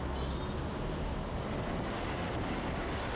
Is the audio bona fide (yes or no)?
yes